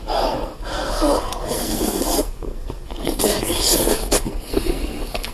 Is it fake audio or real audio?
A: fake